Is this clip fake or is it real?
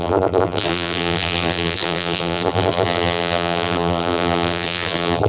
fake